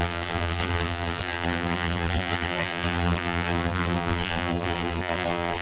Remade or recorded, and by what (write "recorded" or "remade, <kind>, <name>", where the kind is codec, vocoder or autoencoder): remade, vocoder, BigVGAN v2